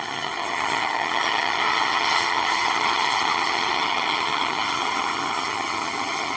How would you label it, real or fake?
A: fake